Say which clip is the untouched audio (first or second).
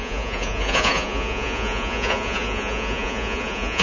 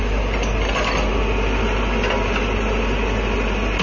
second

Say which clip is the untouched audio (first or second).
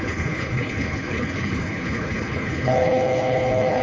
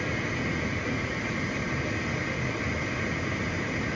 second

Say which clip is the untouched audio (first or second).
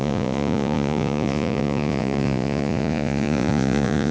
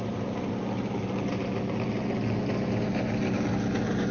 second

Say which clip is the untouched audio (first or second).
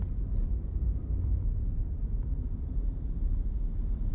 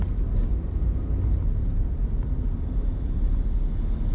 second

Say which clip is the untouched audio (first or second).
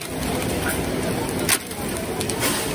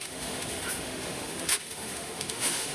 first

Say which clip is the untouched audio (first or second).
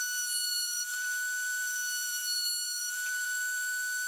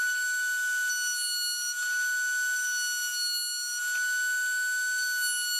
second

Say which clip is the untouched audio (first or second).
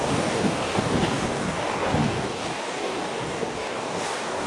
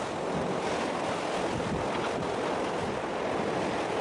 second